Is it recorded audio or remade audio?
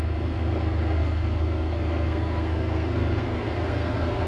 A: remade